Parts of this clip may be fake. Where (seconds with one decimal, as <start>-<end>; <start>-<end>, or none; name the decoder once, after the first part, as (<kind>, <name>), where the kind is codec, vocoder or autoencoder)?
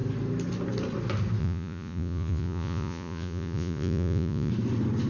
1.4-4.5 (vocoder, Vocos)